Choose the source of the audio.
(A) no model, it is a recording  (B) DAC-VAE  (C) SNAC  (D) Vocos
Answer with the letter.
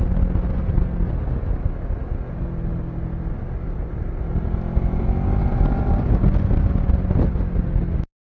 A